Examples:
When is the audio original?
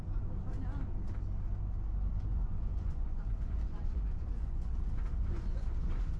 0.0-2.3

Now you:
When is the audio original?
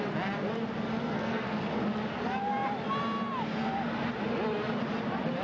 0.0-1.0; 1.7-5.4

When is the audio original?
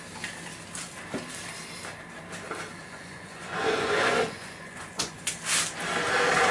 0.0-2.8; 5.3-6.5